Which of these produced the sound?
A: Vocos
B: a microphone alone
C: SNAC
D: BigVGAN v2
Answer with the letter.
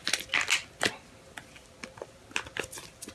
B